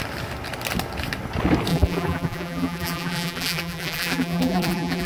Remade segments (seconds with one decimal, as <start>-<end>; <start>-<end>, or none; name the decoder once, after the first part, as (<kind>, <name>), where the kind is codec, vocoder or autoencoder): 1.7-5.1 (vocoder, BigVGAN v2)